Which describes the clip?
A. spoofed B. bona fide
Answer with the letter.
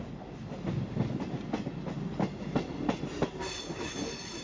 B